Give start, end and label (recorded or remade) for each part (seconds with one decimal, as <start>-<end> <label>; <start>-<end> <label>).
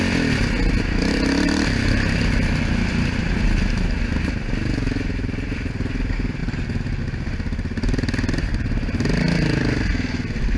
0.0-10.6 recorded